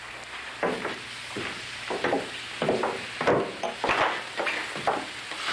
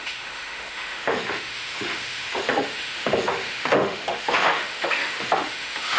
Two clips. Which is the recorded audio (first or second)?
first